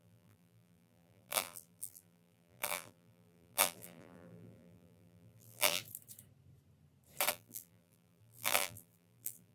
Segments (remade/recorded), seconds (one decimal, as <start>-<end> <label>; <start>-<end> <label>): 0.0-5.8 remade; 5.8-7.3 recorded; 7.3-9.5 remade